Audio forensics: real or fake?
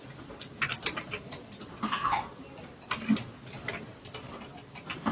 real